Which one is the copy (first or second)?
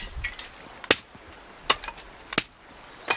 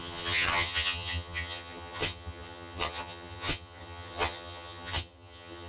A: second